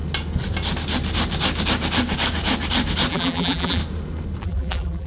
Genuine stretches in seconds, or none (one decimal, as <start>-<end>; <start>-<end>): 0.0-3.1; 3.8-4.4